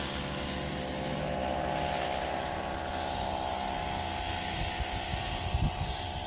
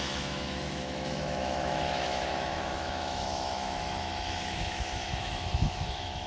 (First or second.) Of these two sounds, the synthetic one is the second